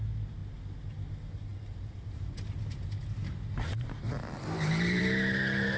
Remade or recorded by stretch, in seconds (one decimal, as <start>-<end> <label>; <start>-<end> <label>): 0.0-5.8 recorded